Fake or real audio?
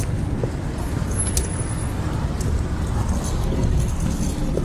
real